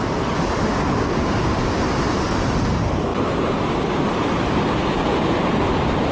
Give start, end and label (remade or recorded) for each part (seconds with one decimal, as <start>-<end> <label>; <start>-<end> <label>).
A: 0.0-0.7 recorded; 0.7-1.6 remade; 1.6-6.1 recorded